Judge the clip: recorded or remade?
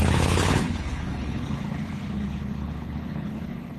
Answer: remade